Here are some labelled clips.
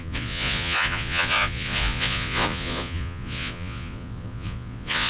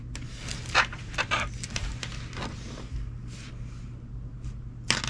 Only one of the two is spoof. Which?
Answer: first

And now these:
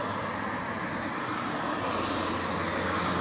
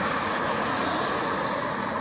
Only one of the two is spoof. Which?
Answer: second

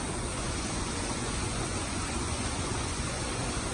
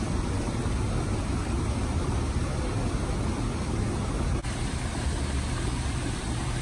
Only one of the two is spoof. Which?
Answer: first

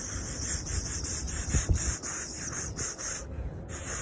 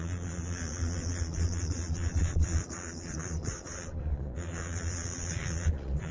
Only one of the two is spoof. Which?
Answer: second